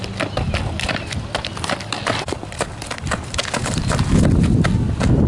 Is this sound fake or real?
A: real